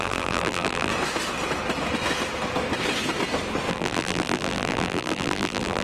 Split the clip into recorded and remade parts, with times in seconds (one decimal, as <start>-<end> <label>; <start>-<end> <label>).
0.0-0.9 remade; 0.9-3.7 recorded; 3.7-5.8 remade